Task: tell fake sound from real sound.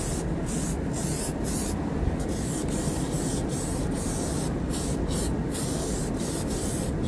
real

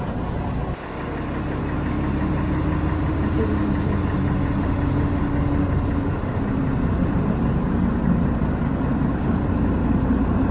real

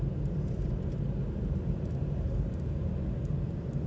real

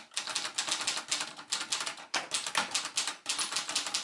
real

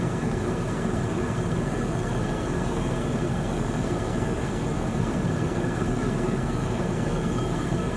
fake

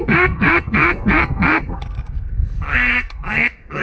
fake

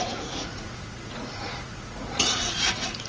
fake